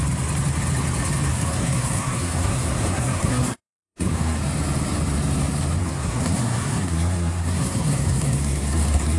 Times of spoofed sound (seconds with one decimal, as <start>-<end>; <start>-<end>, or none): 1.3-4.4; 5.8-9.2